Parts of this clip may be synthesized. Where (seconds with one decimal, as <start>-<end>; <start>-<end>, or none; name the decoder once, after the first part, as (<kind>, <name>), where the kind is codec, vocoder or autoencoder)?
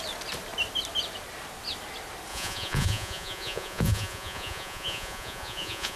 2.3-6.0 (vocoder, Vocos)